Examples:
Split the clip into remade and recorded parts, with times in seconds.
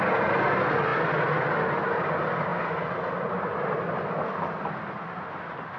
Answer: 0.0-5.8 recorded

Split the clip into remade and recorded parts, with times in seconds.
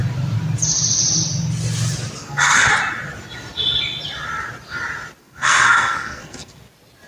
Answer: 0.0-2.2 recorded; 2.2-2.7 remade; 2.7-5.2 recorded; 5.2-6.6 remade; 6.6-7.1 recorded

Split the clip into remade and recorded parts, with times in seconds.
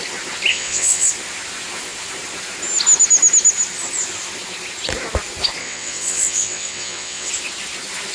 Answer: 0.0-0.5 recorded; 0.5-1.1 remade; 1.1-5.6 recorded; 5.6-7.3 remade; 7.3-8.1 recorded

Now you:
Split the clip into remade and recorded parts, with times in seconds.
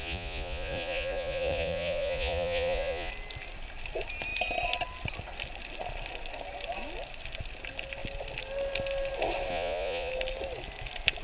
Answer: 0.0-3.1 remade; 3.1-9.5 recorded; 9.5-10.1 remade; 10.1-11.2 recorded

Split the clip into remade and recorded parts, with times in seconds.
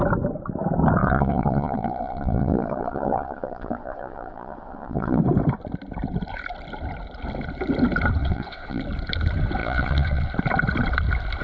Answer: 0.0-1.0 recorded; 1.0-5.2 remade; 5.2-8.2 recorded; 8.2-8.8 remade; 8.8-9.6 recorded; 9.6-10.3 remade; 10.3-11.4 recorded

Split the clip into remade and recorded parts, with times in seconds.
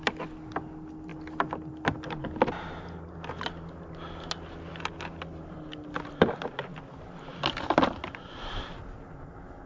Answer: 0.0-9.7 recorded